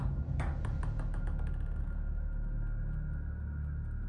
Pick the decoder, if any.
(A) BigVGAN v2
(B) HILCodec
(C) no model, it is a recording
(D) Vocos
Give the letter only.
C